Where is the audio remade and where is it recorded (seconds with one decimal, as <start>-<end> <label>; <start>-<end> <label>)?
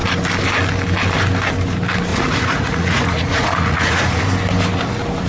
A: 0.0-2.1 recorded; 2.1-4.2 remade; 4.2-5.3 recorded